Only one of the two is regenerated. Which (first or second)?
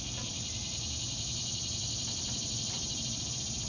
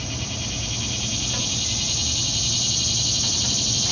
first